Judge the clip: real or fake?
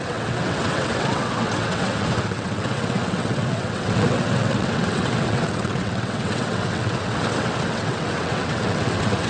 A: fake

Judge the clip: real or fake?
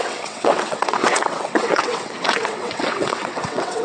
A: fake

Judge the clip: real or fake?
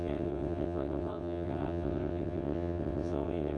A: fake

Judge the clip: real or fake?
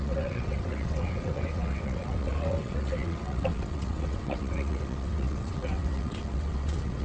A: fake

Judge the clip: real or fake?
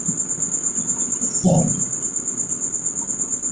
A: real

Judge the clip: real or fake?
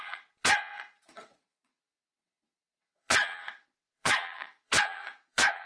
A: fake